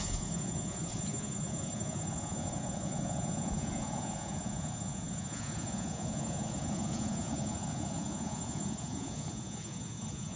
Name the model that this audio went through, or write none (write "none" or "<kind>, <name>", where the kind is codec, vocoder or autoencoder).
vocoder, Vocos